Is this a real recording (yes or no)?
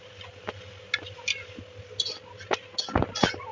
yes